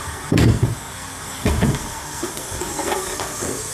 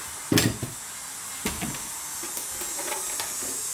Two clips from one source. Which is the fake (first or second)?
first